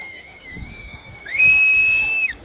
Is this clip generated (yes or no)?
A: yes